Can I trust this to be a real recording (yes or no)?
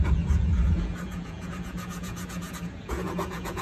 no